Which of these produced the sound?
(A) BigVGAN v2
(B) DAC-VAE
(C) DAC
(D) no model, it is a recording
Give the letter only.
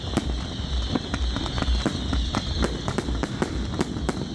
D